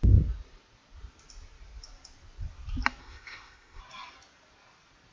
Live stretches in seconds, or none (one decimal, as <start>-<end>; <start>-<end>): 0.0-3.0; 3.8-5.1